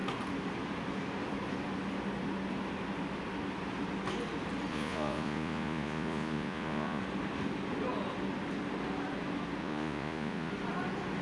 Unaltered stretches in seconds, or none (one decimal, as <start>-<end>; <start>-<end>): 0.0-4.7; 7.0-9.6; 10.5-11.2